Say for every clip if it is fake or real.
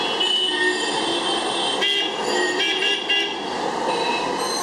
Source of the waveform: real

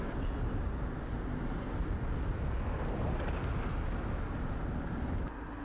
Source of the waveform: real